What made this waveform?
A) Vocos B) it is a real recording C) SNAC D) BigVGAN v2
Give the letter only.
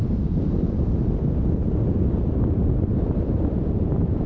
B